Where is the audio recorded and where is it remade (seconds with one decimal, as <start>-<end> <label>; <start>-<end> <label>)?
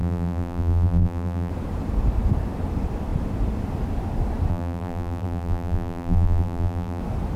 0.0-1.5 remade; 1.5-4.5 recorded; 4.5-7.0 remade; 7.0-7.4 recorded